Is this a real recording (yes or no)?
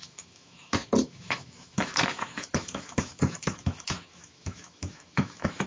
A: no